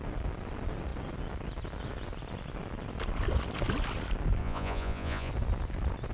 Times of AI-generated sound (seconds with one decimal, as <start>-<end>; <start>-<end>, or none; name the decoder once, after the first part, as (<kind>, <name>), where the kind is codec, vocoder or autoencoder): 4.4-5.3 (vocoder, Vocos)